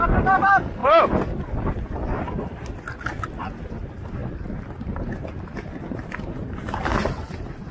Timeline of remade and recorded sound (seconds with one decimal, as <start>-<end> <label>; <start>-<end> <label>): 0.0-7.7 recorded